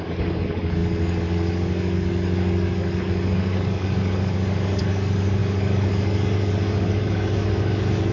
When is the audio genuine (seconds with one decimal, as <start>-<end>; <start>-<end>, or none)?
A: none